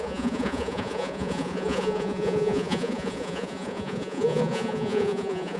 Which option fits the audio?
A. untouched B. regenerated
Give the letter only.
B